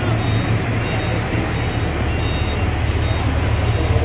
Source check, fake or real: real